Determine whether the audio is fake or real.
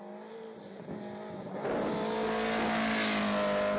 real